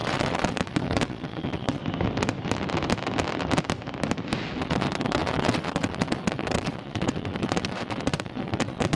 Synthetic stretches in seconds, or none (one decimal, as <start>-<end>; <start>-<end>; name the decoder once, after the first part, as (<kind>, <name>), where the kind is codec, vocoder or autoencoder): 0.0-1.8 (vocoder, WaveNeXt); 4.6-9.0